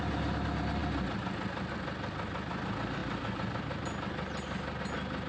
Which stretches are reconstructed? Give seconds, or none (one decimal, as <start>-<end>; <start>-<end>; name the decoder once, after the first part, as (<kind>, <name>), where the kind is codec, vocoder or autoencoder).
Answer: none